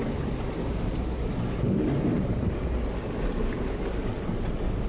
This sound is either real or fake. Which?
real